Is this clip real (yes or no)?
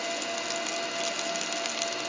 yes